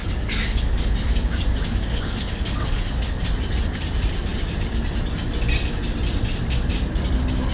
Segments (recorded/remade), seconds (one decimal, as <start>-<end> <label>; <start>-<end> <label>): 0.0-3.2 remade; 3.2-7.5 recorded